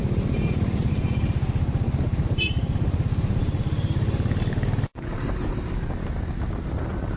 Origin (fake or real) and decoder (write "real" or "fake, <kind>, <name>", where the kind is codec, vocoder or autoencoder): fake, vocoder, BigVGAN v2